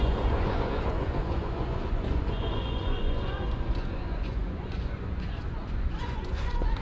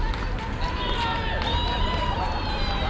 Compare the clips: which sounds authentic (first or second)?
second